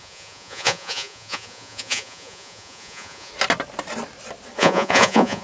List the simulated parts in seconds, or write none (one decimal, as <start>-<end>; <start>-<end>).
0.0-3.3; 4.6-5.4